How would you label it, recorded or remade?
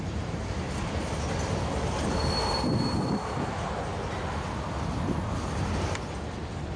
recorded